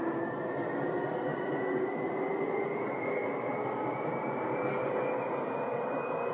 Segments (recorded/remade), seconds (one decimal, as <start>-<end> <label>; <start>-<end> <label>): 0.0-6.3 recorded